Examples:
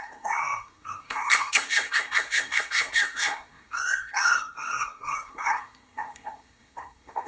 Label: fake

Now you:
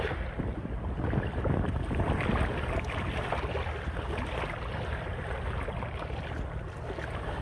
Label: real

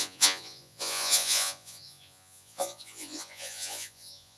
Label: fake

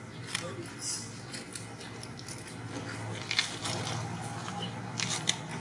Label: real